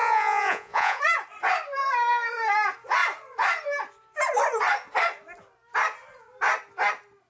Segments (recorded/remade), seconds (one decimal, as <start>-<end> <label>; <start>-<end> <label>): 0.0-1.0 remade; 1.0-7.3 recorded

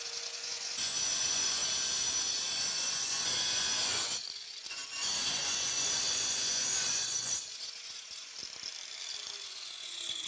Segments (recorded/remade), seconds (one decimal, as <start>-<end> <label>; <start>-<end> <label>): 0.0-1.6 remade; 1.6-2.2 recorded; 2.2-8.4 remade; 8.4-9.4 recorded; 9.4-10.3 remade

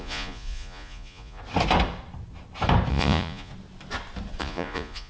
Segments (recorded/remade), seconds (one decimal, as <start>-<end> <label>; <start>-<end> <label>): 0.0-1.4 remade; 1.4-2.9 recorded; 2.9-3.5 remade; 3.5-4.4 recorded; 4.4-5.1 remade

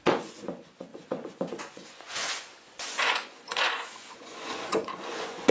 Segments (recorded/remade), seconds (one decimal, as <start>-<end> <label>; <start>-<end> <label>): 0.0-5.5 remade

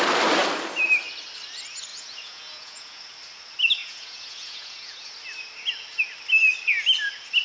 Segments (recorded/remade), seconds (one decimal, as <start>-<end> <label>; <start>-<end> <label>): 0.0-1.9 recorded; 1.9-3.0 remade; 3.0-3.8 recorded; 3.8-5.1 remade; 5.1-7.4 recorded

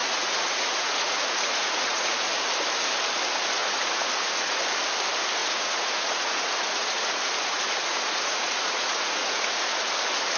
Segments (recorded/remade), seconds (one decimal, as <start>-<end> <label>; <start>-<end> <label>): 0.0-2.4 remade; 2.4-3.6 recorded; 3.6-4.6 remade; 4.6-5.4 recorded; 5.4-9.9 remade; 9.9-10.4 recorded